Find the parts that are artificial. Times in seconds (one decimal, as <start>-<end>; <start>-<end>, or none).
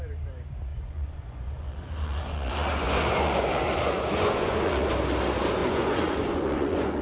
0.7-4.9; 5.6-7.0